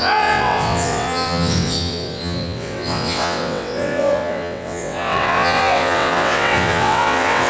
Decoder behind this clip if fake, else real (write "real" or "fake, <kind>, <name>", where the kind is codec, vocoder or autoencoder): fake, vocoder, WaveNeXt